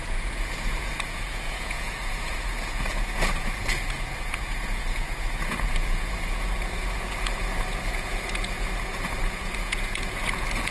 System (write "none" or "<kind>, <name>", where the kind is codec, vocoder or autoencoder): vocoder, Vocos